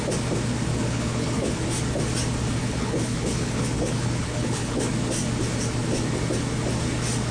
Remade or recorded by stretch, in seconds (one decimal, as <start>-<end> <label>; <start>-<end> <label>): 0.0-0.7 recorded; 0.7-1.6 remade; 1.6-2.6 recorded; 2.6-4.9 remade; 4.9-7.3 recorded